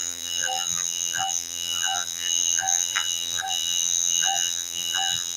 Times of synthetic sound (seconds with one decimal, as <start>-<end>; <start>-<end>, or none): 0.0-5.4